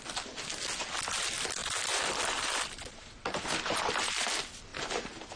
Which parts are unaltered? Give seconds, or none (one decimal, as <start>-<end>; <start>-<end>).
0.0-4.7

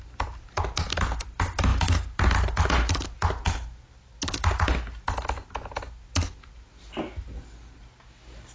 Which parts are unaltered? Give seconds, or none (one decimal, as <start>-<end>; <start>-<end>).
0.0-8.5

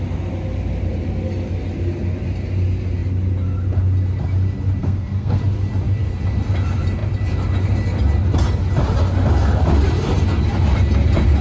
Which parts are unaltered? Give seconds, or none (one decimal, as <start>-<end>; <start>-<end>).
0.0-4.8; 5.4-11.4

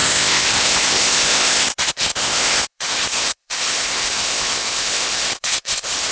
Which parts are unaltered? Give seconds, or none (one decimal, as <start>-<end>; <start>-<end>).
none

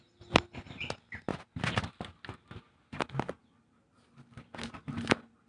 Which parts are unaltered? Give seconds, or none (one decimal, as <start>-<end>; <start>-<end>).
0.0-5.5

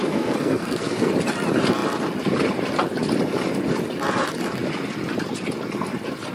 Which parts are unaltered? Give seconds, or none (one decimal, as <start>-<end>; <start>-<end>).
1.1-6.3

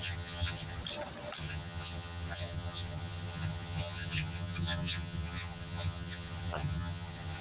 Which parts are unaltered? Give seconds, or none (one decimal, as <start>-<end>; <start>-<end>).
0.8-1.4

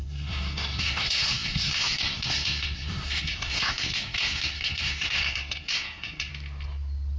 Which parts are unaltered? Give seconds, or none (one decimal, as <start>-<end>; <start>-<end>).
6.3-7.2